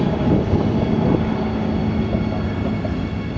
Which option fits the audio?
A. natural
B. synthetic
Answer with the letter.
A